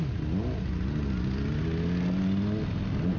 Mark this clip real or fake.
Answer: real